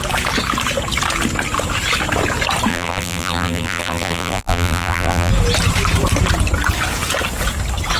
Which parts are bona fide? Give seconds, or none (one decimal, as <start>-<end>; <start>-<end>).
0.0-2.7; 5.3-8.0

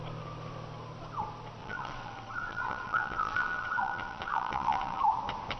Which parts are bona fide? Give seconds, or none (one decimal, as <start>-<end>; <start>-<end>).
0.0-1.6; 5.0-5.6